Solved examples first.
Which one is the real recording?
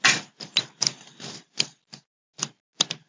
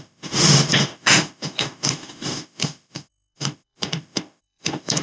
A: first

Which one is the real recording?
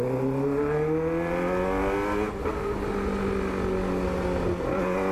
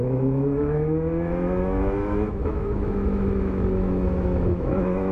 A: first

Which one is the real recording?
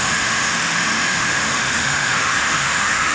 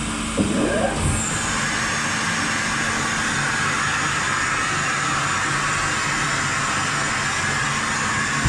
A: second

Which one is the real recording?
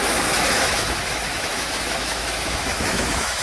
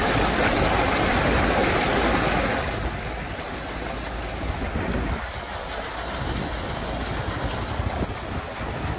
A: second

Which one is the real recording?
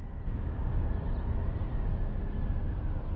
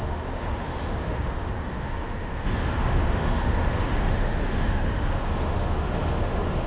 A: first